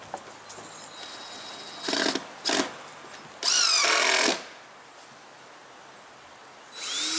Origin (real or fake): real